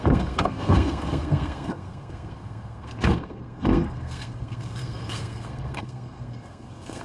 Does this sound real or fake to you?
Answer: fake